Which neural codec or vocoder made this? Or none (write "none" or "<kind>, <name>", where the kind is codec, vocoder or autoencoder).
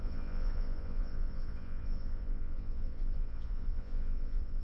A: vocoder, Vocos